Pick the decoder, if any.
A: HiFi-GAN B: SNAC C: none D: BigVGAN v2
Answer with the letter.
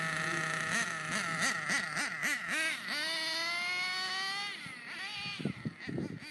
C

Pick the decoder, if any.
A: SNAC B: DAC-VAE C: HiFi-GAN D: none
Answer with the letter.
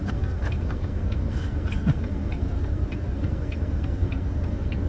A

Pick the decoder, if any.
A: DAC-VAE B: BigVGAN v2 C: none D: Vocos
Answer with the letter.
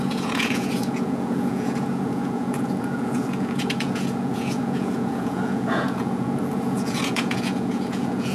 D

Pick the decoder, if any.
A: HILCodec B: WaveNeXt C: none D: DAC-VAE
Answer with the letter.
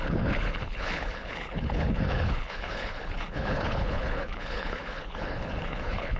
A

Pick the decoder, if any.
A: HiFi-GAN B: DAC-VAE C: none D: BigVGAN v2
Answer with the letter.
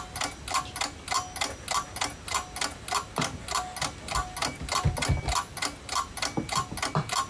C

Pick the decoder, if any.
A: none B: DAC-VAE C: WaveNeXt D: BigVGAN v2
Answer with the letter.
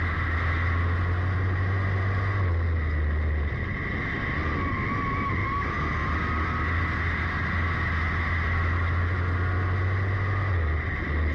A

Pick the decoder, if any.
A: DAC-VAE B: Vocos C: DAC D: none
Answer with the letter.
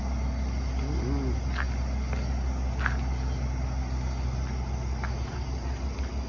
D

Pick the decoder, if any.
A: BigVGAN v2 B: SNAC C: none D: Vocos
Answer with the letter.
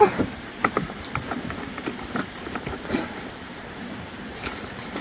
A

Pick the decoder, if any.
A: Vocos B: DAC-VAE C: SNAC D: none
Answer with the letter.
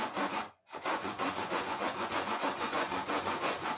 A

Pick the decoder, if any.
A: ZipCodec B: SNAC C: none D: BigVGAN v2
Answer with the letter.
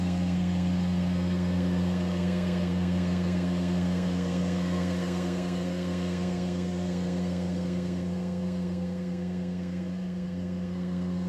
B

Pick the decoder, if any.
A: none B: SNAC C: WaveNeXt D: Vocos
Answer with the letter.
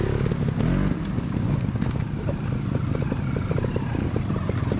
A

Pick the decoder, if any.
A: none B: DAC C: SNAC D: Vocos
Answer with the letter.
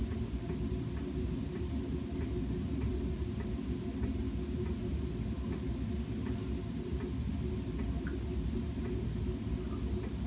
A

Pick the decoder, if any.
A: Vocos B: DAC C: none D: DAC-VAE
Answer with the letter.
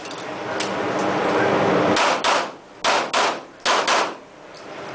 C